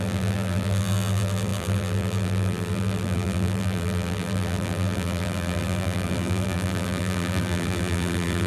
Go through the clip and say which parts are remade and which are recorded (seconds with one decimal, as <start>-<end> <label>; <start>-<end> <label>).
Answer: 0.0-8.5 remade